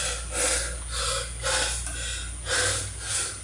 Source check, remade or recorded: recorded